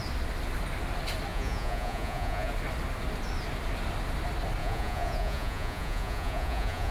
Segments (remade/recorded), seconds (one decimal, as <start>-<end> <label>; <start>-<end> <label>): 0.0-1.3 recorded; 1.3-2.5 remade; 2.5-4.6 recorded; 4.6-6.9 remade